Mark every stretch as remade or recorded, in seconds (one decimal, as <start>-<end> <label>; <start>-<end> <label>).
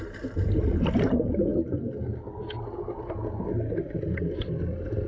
0.0-5.1 recorded